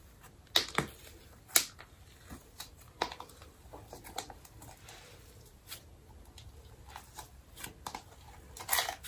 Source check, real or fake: real